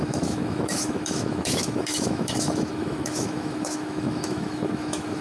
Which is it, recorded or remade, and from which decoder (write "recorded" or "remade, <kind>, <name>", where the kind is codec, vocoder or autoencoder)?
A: remade, autoencoder, DAC-VAE